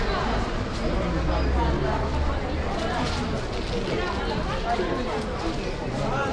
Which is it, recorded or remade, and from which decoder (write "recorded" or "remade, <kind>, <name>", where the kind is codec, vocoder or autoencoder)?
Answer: recorded